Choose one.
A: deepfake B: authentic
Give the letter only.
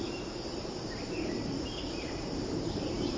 A